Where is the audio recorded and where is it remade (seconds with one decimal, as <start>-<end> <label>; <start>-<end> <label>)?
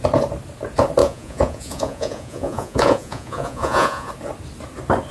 0.0-1.0 recorded; 1.0-4.1 remade; 4.1-5.1 recorded